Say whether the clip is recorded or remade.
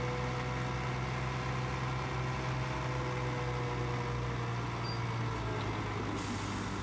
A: recorded